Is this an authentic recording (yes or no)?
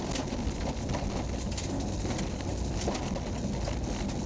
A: yes